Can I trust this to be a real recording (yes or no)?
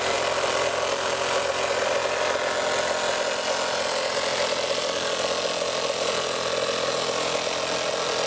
yes